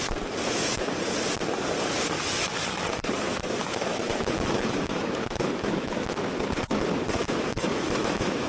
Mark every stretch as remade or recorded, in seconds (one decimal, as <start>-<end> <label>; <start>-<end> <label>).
0.0-3.6 recorded; 3.6-6.4 remade; 6.4-7.2 recorded; 7.2-8.5 remade